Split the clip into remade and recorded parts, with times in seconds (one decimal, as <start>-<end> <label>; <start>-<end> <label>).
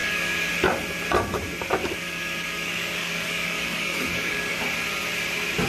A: 0.0-0.5 remade; 0.5-1.8 recorded; 1.8-4.6 remade; 4.6-5.7 recorded